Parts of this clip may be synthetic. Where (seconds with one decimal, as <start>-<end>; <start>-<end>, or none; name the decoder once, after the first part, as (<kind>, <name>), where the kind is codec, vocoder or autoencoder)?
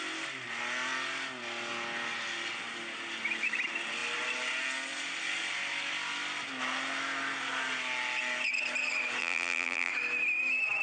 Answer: 9.2-9.9 (vocoder, BigVGAN v2)